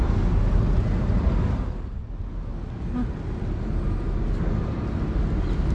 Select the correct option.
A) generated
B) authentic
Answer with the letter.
B